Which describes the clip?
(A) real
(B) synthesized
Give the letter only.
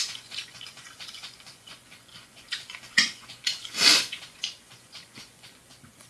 B